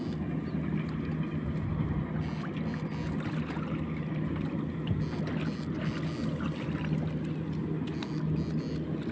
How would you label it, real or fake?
real